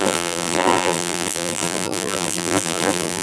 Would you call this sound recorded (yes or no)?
no